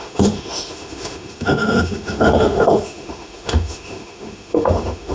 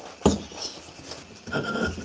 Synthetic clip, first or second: first